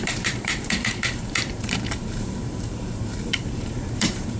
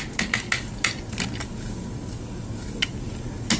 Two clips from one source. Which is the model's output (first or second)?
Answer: first